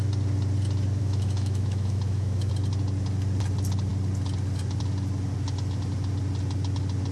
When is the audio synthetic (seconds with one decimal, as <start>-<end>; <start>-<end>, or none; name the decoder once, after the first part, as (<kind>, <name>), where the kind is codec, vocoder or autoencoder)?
1.0-2.5 (autoencoder, DAC-VAE)